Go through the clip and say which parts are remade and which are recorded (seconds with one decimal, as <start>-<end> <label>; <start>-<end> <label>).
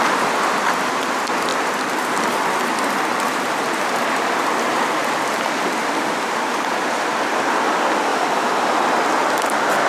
0.0-8.1 recorded; 8.1-8.6 remade; 8.6-9.9 recorded